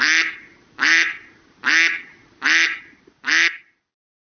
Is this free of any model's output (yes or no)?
yes